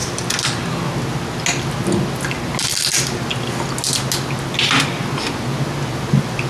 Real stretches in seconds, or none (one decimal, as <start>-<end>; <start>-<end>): 0.0-6.5